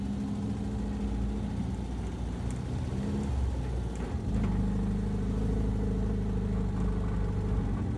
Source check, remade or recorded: recorded